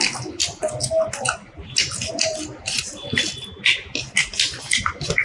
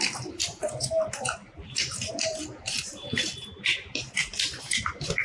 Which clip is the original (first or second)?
first